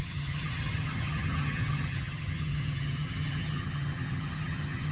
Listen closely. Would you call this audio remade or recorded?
remade